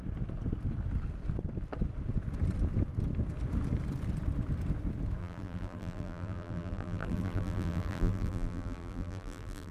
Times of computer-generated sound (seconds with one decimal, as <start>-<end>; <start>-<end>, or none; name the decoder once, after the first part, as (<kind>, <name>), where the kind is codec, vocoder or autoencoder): 5.2-9.7 (vocoder, BigVGAN v2)